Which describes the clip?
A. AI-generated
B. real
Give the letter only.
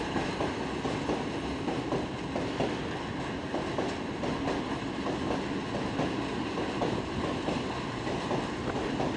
B